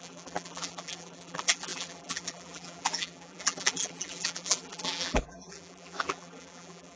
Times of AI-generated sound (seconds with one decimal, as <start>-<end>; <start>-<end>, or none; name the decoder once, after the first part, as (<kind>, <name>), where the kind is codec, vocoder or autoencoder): 0.0-7.0 (vocoder, BigVGAN v2)